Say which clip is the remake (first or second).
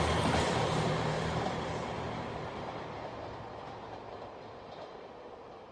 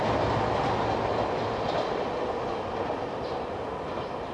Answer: first